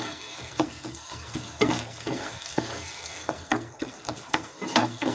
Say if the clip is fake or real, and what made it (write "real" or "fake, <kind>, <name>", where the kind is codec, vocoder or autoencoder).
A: fake, codec, SNAC